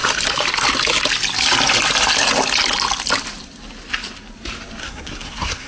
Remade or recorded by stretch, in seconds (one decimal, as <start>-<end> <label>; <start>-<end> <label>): 0.0-4.8 recorded; 4.8-5.7 remade